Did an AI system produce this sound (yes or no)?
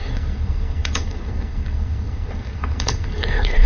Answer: yes